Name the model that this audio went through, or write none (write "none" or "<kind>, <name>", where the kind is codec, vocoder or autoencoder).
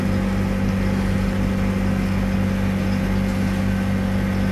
none